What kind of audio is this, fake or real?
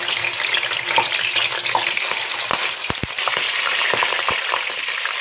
real